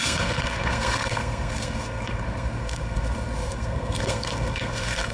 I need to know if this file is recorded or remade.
remade